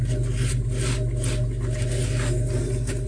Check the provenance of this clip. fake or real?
real